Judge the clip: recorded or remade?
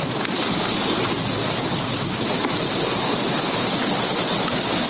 recorded